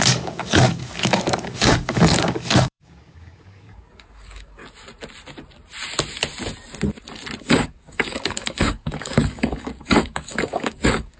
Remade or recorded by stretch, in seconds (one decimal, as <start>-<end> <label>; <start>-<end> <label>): 0.0-4.6 remade; 4.6-7.4 recorded; 7.4-11.2 remade